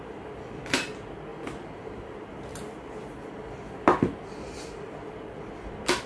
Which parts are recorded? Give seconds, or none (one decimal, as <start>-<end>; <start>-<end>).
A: 0.0-6.1